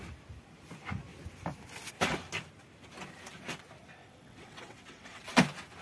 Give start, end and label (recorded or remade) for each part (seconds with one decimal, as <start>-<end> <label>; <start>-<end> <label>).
0.0-4.0 recorded; 4.0-5.2 remade; 5.2-5.8 recorded